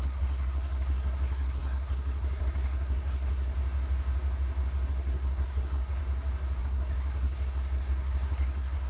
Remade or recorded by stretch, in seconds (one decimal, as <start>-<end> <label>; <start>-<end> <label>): 0.0-3.5 remade; 3.5-4.9 recorded; 4.9-6.0 remade; 6.0-6.6 recorded; 6.6-8.9 remade